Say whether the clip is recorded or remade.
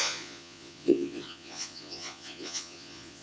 remade